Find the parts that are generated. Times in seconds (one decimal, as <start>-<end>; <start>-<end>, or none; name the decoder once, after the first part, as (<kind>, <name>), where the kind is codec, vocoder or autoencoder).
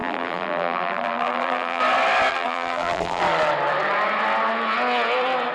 0.0-1.8 (vocoder, BigVGAN v2); 2.3-3.2